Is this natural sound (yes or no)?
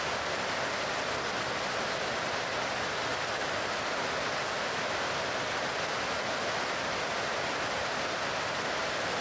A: yes